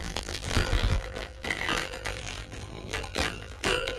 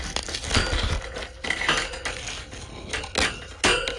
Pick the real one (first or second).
second